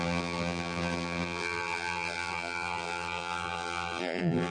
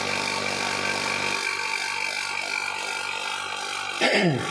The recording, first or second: second